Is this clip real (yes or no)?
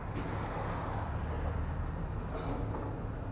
yes